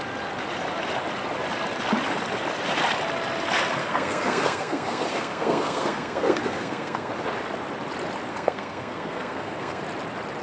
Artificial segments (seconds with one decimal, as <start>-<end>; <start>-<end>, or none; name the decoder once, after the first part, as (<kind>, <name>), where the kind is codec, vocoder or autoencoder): 3.8-7.1 (codec, SNAC); 8.3-9.8

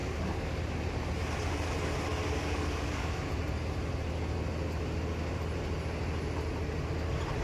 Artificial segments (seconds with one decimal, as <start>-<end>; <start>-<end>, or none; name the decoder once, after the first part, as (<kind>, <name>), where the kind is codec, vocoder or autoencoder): 0.0-0.6 (codec, DAC); 2.2-3.1

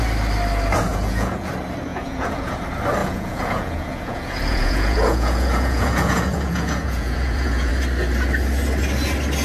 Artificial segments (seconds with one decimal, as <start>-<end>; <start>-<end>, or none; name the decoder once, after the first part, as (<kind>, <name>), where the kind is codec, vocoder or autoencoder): 0.9-1.5 (vocoder, Vocos); 1.9-2.6; 3.0-7.7

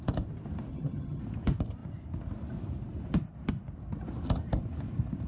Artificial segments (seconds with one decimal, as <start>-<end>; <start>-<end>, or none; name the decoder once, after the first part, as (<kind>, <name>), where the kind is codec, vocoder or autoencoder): 0.7-1.2 (vocoder, HiFi-GAN)

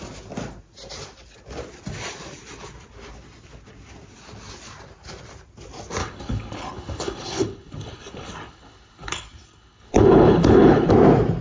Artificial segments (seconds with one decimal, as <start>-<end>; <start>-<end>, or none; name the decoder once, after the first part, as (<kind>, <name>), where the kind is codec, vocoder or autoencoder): 6.0-10.9 (codec, HILCodec)